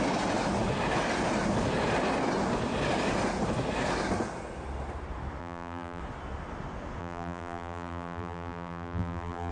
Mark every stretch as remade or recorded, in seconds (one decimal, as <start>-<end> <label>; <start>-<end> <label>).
0.0-5.4 recorded; 5.4-6.0 remade; 6.0-7.0 recorded; 7.0-9.5 remade